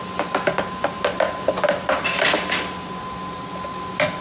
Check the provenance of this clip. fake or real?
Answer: real